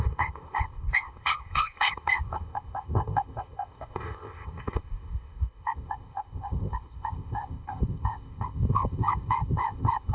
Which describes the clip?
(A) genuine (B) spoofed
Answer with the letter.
B